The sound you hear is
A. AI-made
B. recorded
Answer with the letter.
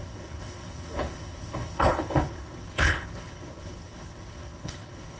A